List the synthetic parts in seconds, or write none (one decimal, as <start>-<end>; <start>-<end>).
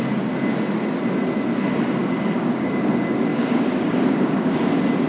2.0-2.7; 3.3-4.6